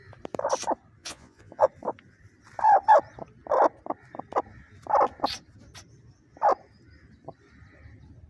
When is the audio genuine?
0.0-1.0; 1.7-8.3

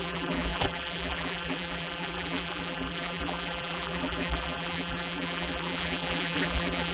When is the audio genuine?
none

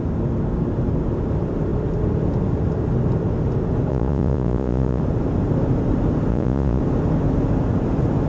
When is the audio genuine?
0.0-3.9; 5.0-6.3; 6.8-8.3

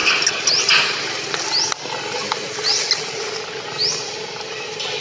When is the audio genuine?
0.0-5.0

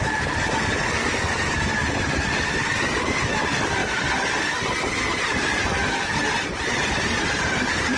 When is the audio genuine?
0.0-3.8; 4.4-5.8; 7.6-8.0

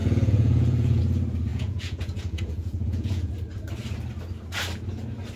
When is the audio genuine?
1.0-1.5; 3.3-5.4

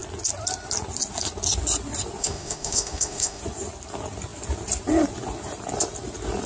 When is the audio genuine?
0.0-2.2; 3.4-6.5